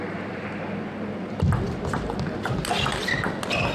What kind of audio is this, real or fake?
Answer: real